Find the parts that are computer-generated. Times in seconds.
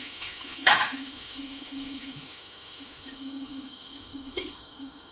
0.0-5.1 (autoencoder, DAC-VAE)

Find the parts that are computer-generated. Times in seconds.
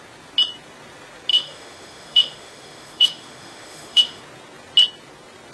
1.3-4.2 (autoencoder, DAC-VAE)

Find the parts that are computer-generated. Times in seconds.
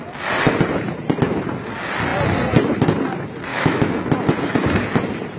3.5-4.0 (autoencoder, DAC-VAE)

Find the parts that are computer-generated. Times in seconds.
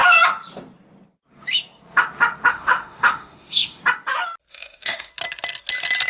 2.5-3.8 (autoencoder, DAC-VAE); 4.5-5.1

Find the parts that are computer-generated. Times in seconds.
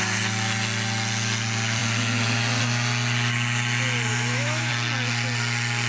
4.1-4.7 (autoencoder, DAC-VAE)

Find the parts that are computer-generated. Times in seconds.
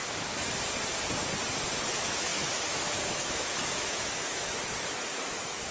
1.9-5.7 (autoencoder, DAC-VAE)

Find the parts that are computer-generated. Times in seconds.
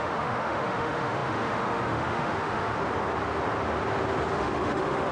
0.0-2.7 (autoencoder, DAC-VAE); 4.3-5.1